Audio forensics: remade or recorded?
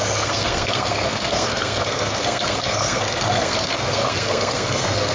remade